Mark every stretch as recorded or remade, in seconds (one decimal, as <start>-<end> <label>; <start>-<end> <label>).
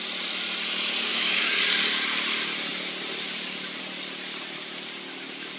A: 0.0-1.1 recorded; 1.1-1.6 remade; 1.6-5.6 recorded